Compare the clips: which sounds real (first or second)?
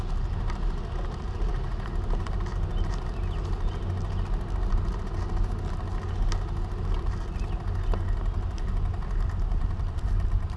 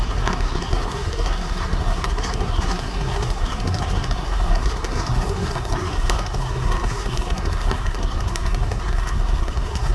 first